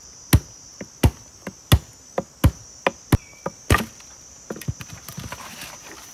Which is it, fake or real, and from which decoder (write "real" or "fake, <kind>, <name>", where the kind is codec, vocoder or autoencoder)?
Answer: real